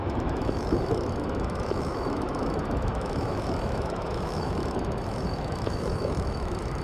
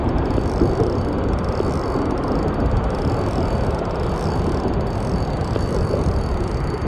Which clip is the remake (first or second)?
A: first